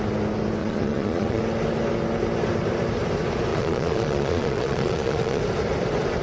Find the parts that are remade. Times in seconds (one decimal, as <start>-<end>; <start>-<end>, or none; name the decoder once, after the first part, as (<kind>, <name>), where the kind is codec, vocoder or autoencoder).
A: 0.6-1.4 (vocoder, Vocos); 3.5-5.4

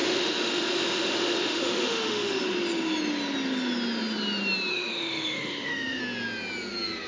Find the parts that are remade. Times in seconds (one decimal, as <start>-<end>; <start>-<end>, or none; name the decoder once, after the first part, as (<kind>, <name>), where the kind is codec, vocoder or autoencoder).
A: 0.0-2.4 (autoencoder, DAC-VAE); 4.7-6.0

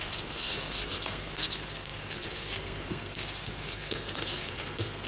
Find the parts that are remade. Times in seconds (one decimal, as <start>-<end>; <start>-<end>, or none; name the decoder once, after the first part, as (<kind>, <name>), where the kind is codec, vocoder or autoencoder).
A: 0.0-5.1 (codec, SNAC)

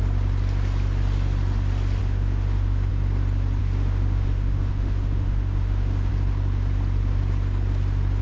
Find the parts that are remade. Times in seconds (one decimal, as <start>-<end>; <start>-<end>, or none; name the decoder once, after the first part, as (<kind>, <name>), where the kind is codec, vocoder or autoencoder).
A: 2.0-2.9 (autoencoder, DAC-VAE); 3.6-6.1

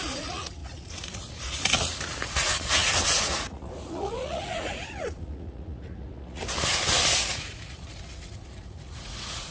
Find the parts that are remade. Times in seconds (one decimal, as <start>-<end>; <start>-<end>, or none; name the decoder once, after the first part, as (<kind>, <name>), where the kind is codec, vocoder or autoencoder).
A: 0.0-6.4 (vocoder, Vocos); 7.3-9.5

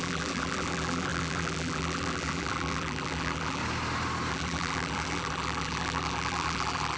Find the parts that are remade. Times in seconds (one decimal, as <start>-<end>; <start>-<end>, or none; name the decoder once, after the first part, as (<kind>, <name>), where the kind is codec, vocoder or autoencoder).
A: 0.0-3.6 (vocoder, BigVGAN v2); 4.3-7.0